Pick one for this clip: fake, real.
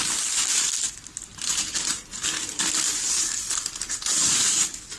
real